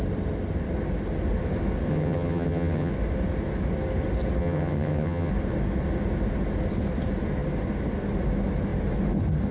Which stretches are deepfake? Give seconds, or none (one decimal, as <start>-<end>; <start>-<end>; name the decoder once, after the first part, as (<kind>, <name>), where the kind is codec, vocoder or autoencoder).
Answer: 1.9-2.9 (vocoder, HiFi-GAN); 4.4-5.3